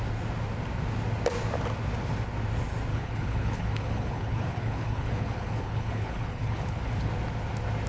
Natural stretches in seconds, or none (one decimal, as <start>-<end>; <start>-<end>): 0.0-2.9; 7.1-7.9